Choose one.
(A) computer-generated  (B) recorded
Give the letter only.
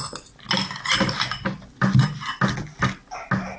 B